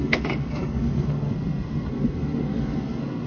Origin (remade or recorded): remade